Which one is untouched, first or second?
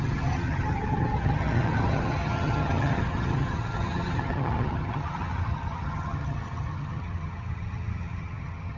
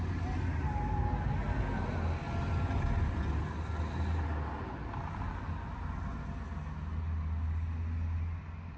second